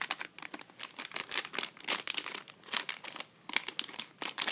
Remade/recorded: recorded